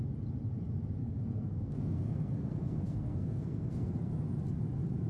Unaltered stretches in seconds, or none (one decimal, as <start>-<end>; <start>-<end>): 0.0-1.0; 4.1-5.1